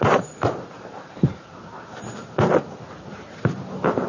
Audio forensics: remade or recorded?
recorded